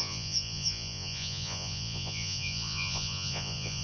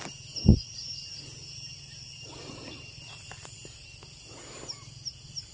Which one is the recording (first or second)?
second